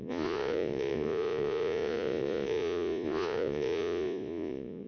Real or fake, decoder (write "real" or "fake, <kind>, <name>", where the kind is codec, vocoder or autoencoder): fake, vocoder, Vocos